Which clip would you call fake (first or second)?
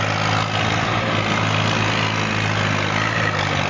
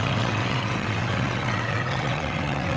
second